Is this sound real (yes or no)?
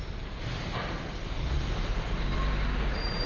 no